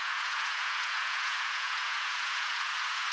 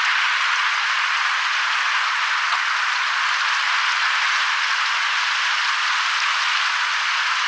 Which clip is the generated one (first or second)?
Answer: first